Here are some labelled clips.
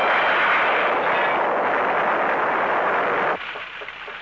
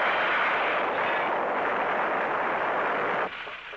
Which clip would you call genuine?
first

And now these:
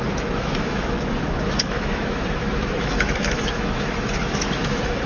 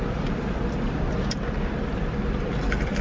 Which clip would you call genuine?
second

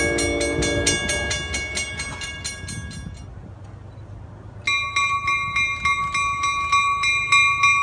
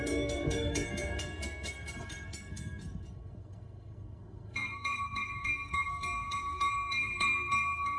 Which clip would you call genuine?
first